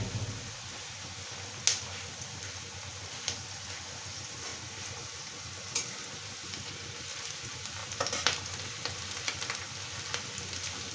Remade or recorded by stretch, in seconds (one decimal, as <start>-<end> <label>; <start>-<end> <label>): 0.0-7.8 recorded; 7.8-9.0 remade; 9.0-10.9 recorded